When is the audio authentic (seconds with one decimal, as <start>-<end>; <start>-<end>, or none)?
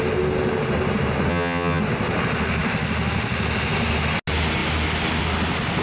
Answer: 0.0-1.3; 1.8-5.8